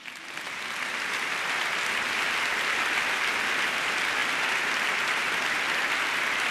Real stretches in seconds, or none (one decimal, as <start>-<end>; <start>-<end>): 0.0-6.5